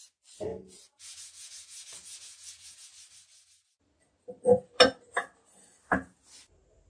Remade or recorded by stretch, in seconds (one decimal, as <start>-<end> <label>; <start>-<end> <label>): 0.0-0.5 recorded; 0.5-2.9 remade; 2.9-6.9 recorded